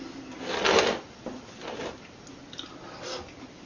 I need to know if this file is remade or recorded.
recorded